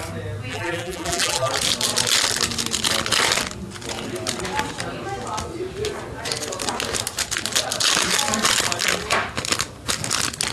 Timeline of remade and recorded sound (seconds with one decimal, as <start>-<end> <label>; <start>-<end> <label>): 0.0-0.5 recorded; 0.5-1.5 remade; 1.5-10.5 recorded